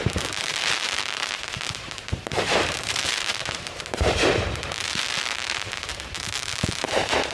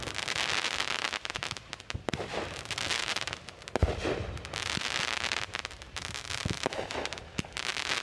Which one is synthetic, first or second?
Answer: first